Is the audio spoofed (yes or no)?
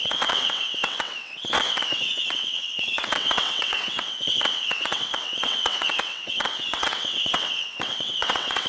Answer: yes